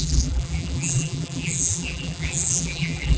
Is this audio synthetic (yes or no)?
yes